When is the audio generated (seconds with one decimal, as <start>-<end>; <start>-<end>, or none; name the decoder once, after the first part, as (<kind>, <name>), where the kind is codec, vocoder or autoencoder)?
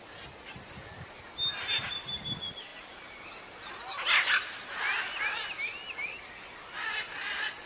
none